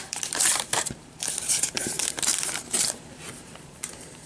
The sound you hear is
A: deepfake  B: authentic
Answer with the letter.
A